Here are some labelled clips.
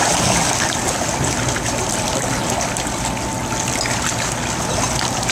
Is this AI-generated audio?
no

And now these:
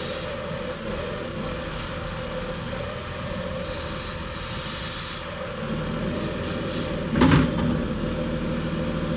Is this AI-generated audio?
no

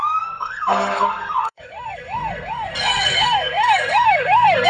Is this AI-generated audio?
yes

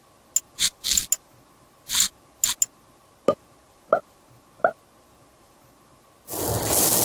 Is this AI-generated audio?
no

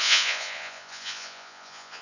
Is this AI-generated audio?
yes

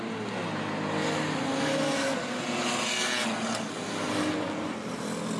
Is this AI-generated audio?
no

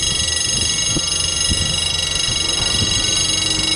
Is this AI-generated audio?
no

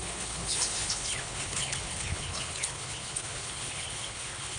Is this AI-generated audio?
yes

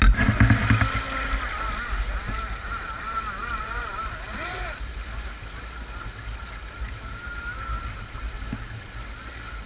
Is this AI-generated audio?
no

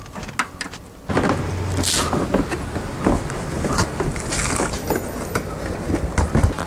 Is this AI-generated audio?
no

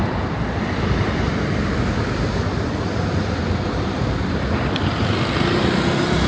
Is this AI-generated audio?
yes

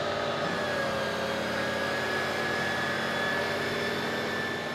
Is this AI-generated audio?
no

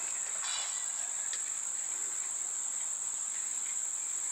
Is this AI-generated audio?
yes